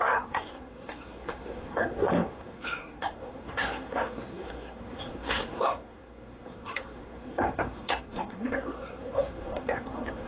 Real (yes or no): no